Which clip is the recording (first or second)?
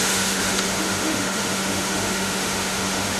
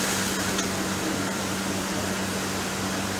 second